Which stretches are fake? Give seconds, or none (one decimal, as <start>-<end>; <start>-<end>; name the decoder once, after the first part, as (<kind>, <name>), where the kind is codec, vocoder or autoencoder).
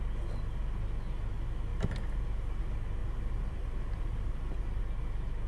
1.7-2.6 (vocoder, BigVGAN v2); 3.0-4.8